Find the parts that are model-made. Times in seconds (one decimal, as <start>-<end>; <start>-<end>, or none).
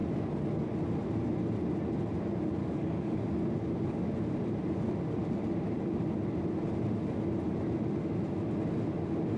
2.6-3.2